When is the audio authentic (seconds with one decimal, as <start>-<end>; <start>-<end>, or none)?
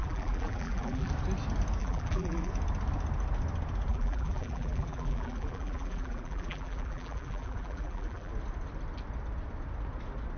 1.1-1.8; 2.5-3.9; 8.3-10.4